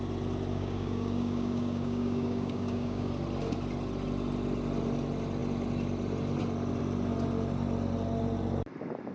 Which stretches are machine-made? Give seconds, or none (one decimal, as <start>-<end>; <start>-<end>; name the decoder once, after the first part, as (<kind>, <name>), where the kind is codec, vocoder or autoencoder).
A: 0.5-3.1 (codec, DAC)